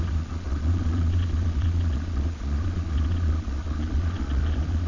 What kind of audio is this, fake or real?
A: fake